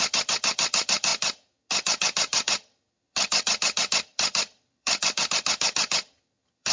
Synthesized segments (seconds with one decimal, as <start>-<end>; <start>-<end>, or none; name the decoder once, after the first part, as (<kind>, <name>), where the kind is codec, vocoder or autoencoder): 0.0-6.7 (vocoder, HiFi-GAN)